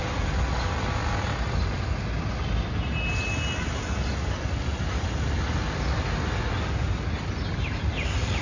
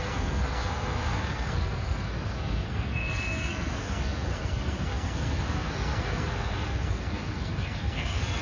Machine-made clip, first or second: second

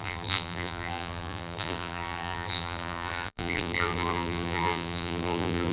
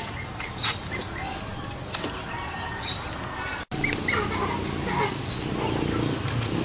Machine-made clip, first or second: first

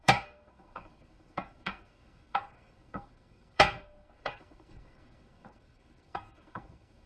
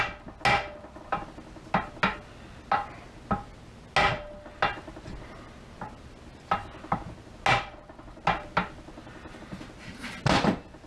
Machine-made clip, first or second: first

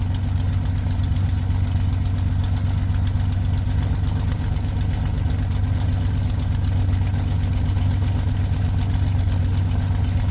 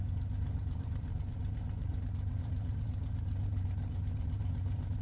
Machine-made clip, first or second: second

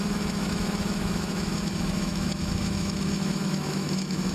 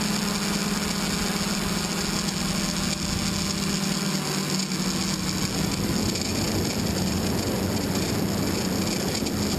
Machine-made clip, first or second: first